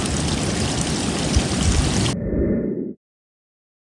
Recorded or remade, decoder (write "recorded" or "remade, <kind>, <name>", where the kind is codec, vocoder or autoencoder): recorded